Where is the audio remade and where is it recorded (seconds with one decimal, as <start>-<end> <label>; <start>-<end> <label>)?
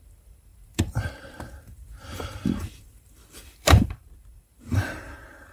0.0-5.5 remade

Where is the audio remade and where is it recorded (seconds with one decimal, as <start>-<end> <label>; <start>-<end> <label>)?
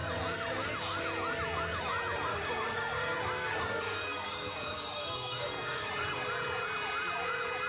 0.0-2.3 recorded; 2.3-6.2 remade; 6.2-7.7 recorded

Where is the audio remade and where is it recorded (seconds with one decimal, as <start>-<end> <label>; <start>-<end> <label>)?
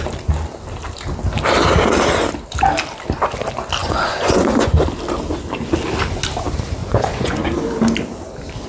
0.0-3.8 recorded; 3.8-4.7 remade; 4.7-6.8 recorded; 6.8-7.4 remade; 7.4-8.7 recorded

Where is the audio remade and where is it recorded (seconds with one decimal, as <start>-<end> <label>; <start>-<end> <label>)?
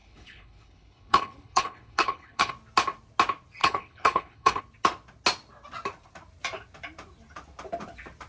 0.0-2.5 remade; 2.5-3.6 recorded; 3.6-4.6 remade; 4.6-8.3 recorded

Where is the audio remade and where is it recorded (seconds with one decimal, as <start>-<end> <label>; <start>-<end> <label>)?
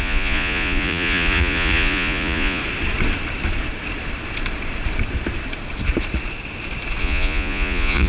0.0-2.6 remade; 2.6-7.0 recorded; 7.0-8.1 remade